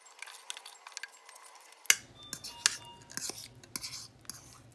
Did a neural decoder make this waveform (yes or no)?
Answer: no